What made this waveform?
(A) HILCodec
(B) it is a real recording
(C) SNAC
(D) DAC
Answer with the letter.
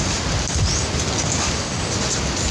B